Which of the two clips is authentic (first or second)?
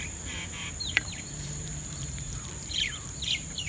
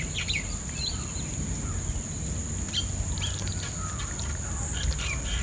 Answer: second